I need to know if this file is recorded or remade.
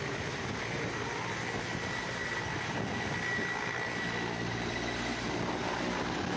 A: recorded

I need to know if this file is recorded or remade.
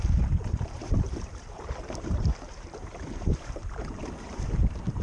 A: remade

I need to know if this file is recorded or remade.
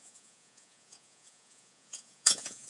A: remade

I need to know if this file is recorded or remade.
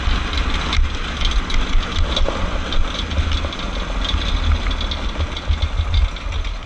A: recorded